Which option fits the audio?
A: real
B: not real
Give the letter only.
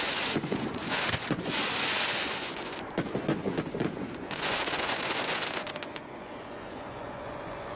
B